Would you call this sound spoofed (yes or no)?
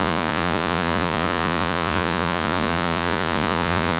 yes